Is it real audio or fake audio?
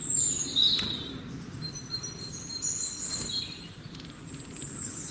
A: real